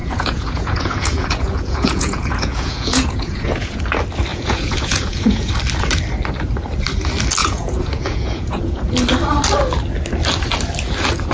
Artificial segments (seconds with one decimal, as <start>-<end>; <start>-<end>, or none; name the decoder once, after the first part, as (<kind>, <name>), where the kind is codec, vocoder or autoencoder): 0.0-3.8 (vocoder, Vocos); 4.3-5.5; 7.4-8.9